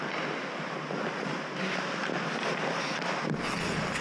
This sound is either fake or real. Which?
real